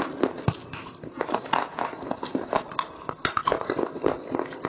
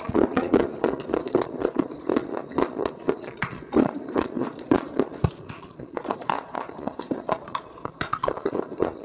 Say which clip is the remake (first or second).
second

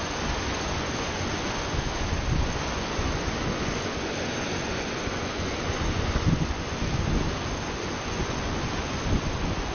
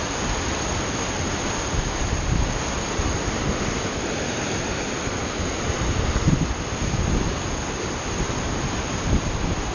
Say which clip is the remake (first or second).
first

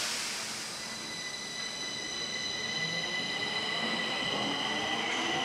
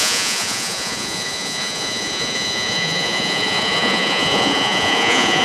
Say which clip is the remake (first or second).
second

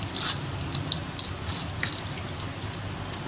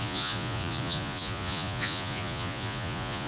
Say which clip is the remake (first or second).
second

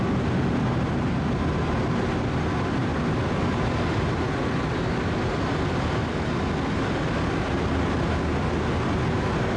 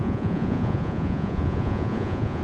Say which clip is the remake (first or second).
second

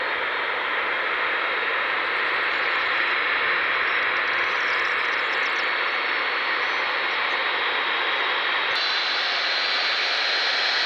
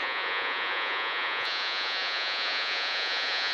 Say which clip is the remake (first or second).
second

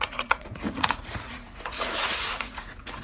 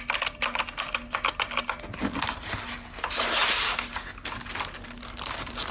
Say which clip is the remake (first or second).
first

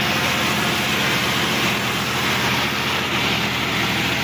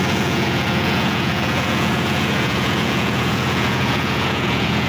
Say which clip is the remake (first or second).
second